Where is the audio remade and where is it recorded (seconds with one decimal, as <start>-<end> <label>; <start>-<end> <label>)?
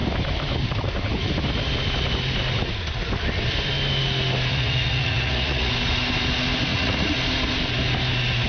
0.0-4.5 recorded; 4.5-5.7 remade; 5.7-6.7 recorded; 6.7-7.2 remade; 7.2-8.5 recorded